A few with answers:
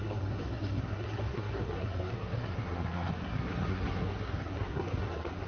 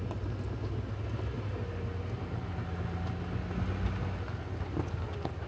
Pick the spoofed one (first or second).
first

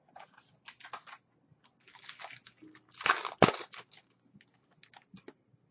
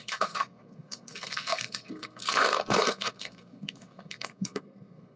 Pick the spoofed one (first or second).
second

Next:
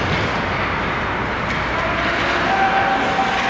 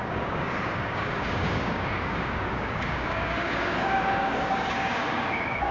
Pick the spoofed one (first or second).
second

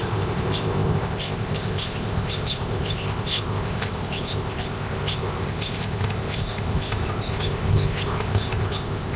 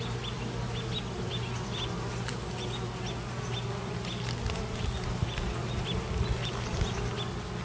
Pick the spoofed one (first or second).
first